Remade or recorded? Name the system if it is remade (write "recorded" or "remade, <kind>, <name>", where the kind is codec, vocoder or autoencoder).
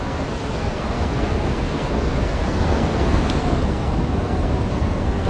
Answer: remade, codec, SNAC